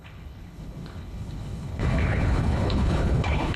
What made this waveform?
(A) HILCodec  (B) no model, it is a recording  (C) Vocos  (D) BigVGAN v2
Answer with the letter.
A